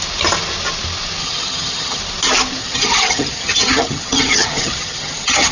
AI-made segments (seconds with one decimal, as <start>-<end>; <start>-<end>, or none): 1.2-2.0; 2.6-5.5

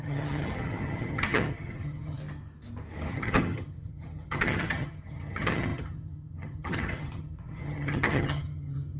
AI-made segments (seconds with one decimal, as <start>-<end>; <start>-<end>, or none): 0.0-2.2; 3.1-9.0

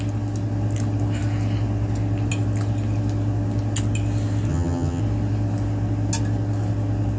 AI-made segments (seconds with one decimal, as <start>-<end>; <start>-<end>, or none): 4.5-5.0

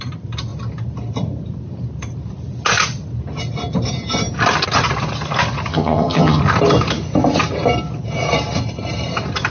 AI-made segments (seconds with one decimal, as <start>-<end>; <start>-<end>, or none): 5.7-6.4

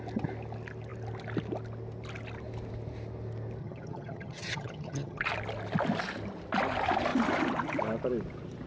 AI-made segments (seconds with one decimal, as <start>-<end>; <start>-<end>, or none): 3.6-5.3